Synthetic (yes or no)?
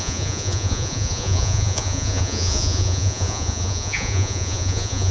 yes